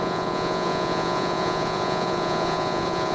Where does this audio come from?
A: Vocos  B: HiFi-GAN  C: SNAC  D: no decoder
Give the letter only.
A